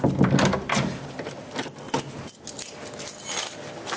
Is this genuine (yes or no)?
yes